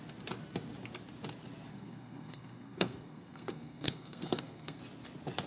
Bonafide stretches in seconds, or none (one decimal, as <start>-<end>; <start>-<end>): 0.0-1.7; 4.8-5.5